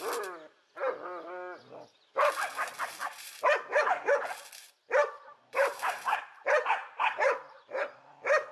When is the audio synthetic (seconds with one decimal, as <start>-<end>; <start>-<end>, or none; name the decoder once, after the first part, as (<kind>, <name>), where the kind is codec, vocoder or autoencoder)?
3.0-4.1 (vocoder, BigVGAN v2); 5.0-6.2

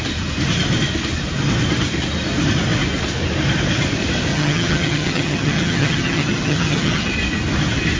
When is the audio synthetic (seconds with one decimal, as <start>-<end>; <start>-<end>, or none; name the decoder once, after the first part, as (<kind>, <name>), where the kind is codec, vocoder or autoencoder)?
4.3-7.1 (vocoder, HiFi-GAN)

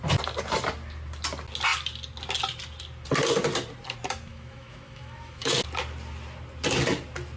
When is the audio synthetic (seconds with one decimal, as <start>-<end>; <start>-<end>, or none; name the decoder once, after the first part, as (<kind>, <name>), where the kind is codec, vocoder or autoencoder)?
4.3-5.5 (autoencoder, DAC-VAE)

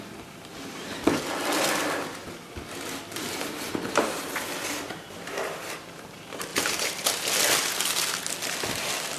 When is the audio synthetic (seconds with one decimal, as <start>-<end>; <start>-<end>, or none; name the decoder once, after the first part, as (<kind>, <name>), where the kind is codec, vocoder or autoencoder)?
6.5-7.3 (vocoder, BigVGAN v2)

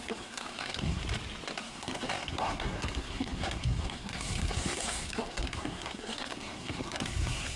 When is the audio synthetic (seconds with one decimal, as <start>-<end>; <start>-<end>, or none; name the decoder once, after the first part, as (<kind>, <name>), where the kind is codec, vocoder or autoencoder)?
0.0-1.0 (codec, SNAC); 1.6-7.6

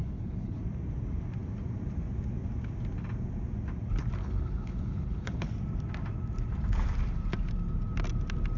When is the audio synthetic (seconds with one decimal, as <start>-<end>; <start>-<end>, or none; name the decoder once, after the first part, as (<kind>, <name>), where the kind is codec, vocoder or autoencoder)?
0.0-0.6 (codec, HILCodec); 4.2-5.5

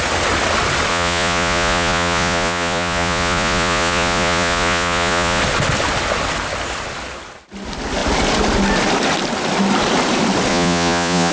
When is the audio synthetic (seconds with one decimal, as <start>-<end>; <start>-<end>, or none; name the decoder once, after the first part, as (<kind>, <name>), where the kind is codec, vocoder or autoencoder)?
0.9-5.4 (vocoder, Vocos); 10.5-11.3